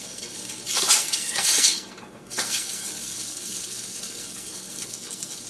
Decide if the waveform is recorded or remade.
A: remade